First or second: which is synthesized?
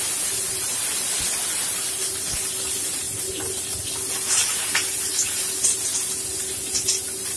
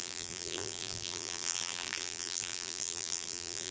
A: second